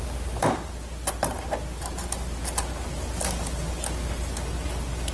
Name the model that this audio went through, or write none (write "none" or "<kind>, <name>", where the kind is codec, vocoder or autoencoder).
none